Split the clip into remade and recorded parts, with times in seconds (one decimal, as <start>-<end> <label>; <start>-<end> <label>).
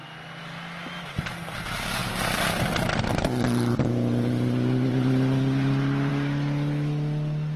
0.0-7.6 recorded